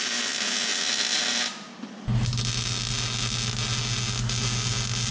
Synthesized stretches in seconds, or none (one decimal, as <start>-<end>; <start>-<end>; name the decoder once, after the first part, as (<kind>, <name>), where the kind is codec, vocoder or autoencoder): none

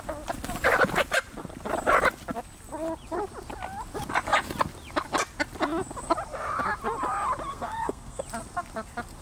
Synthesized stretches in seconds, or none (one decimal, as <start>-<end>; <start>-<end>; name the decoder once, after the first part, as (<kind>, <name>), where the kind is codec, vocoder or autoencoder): 7.5-8.2 (codec, SNAC)

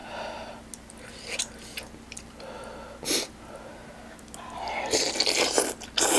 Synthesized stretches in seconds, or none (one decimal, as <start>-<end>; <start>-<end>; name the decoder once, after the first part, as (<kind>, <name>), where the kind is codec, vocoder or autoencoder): none

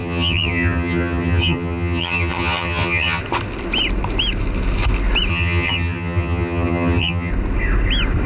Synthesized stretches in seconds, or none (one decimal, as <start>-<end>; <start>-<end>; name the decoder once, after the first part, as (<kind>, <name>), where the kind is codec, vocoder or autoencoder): 0.0-3.2 (vocoder, HiFi-GAN); 5.3-7.3